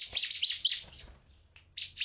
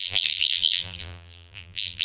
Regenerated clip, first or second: second